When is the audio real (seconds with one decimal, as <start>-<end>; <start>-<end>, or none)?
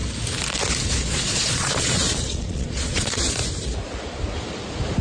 0.0-0.8; 3.4-5.0